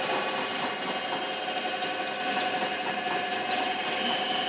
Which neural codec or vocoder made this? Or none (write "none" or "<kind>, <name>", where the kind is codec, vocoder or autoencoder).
none